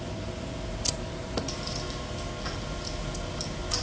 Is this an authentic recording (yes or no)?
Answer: yes